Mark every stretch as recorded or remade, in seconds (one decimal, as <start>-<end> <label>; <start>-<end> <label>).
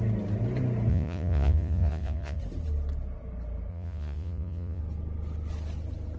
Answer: 0.0-0.9 recorded; 0.9-2.4 remade; 2.4-3.7 recorded; 3.7-4.8 remade; 4.8-6.2 recorded